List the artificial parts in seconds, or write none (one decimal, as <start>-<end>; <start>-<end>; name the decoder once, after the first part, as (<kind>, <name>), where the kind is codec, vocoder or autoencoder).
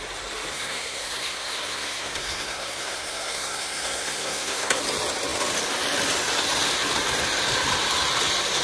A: 0.5-4.8 (codec, SNAC)